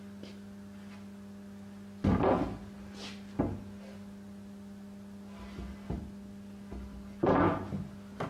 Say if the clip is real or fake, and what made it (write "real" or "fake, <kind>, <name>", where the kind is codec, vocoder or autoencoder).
real